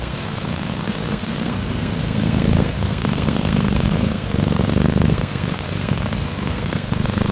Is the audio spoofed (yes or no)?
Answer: yes